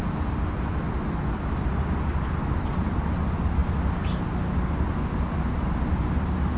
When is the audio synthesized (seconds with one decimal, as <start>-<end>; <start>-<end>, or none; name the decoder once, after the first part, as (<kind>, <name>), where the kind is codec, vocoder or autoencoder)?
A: none

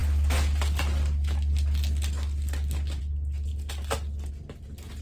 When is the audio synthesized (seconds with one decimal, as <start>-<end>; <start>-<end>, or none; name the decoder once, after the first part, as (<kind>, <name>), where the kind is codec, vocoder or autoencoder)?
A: none

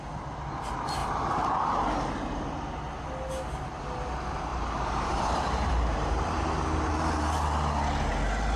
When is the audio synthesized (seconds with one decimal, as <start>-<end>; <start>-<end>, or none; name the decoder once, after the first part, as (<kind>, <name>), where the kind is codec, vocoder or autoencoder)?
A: 4.5-6.9 (vocoder, BigVGAN v2)

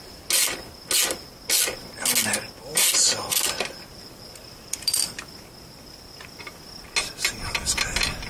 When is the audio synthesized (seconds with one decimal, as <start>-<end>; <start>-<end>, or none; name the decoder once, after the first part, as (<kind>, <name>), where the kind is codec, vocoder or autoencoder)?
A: 2.7-6.8 (vocoder, BigVGAN v2)

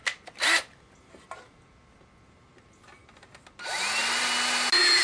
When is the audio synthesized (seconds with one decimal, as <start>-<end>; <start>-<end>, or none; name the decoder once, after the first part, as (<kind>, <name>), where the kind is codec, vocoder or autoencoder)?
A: none

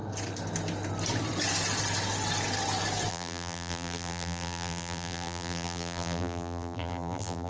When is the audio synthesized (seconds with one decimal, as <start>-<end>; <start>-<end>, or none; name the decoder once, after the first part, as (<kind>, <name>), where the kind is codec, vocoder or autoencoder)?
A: 3.1-7.5 (vocoder, BigVGAN v2)

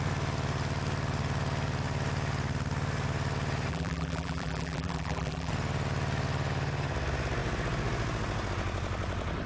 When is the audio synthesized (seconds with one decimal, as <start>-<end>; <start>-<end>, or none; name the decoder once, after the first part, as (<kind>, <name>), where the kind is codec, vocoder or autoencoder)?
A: 3.7-5.5 (vocoder, BigVGAN v2)

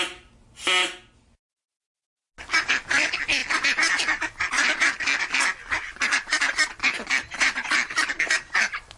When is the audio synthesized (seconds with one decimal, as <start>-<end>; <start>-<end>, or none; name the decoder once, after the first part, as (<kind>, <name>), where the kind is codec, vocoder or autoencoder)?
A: 6.0-8.5 (vocoder, BigVGAN v2)